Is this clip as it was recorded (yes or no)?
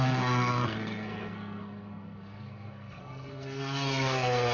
no